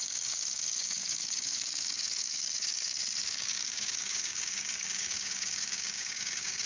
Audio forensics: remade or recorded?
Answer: remade